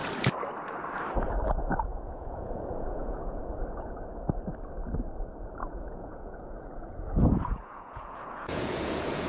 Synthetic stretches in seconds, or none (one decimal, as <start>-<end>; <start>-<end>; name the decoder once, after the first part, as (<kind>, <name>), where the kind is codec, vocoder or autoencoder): 1.9-3.5 (vocoder, Vocos); 5.6-9.3